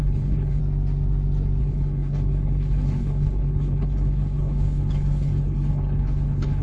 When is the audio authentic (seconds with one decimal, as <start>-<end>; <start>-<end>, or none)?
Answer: 0.6-1.6

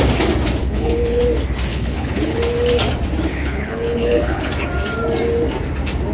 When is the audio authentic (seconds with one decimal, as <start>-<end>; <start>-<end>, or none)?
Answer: 0.0-0.6; 1.2-1.7; 2.4-3.3; 4.5-6.1

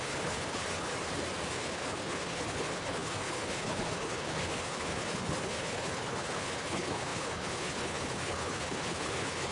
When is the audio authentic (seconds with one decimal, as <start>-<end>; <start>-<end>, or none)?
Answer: 0.9-1.5

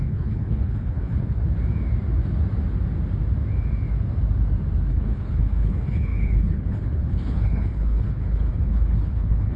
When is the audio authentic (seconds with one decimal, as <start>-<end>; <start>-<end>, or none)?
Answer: 1.4-4.9

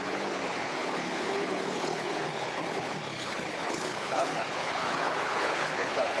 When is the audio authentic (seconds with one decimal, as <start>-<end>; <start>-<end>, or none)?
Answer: none